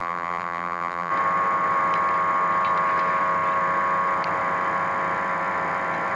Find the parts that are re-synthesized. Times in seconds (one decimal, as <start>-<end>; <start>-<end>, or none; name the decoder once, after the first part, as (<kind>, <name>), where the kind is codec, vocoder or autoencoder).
0.0-1.1 (vocoder, BigVGAN v2)